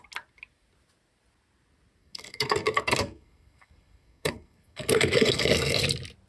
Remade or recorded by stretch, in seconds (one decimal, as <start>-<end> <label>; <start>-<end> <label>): 0.0-2.0 recorded; 2.0-5.8 remade; 5.8-6.3 recorded